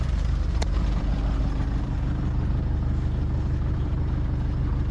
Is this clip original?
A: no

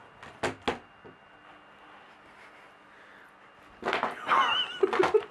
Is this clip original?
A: yes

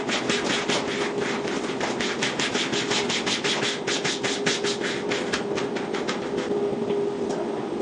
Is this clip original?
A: yes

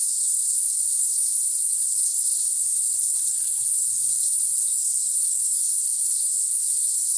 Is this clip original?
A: no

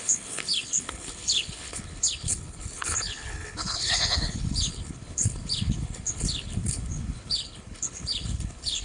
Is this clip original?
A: no